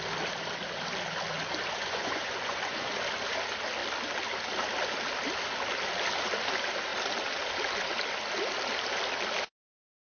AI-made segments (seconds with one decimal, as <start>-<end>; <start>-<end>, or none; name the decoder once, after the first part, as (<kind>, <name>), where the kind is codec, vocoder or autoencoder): 1.8-2.9 (vocoder, Vocos)